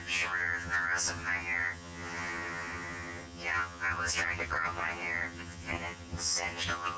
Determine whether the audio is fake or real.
fake